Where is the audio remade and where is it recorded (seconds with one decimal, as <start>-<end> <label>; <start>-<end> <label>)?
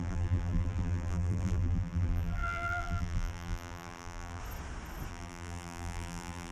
0.0-4.4 remade; 4.4-5.1 recorded; 5.1-6.5 remade